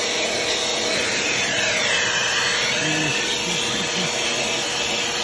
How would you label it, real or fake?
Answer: real